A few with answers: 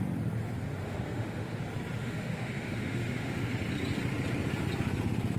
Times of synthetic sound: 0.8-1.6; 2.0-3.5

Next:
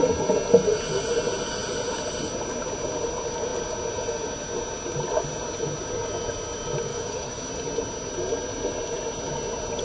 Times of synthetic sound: 6.9-7.5

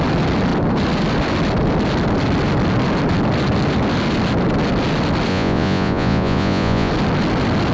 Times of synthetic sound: 5.3-6.9

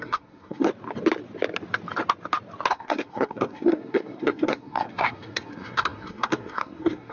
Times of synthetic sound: 0.0-0.7; 2.7-7.1

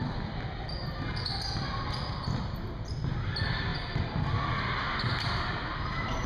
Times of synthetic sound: none

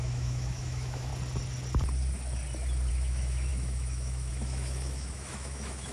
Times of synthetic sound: 0.0-1.1; 2.9-5.9